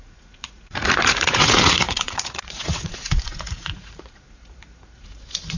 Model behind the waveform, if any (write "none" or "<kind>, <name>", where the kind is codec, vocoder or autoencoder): vocoder, Vocos